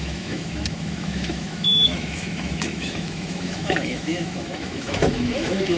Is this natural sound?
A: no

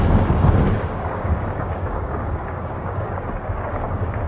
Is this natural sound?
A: no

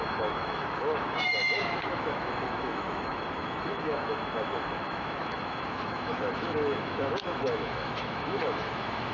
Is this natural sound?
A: no